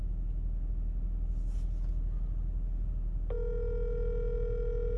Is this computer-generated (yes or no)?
no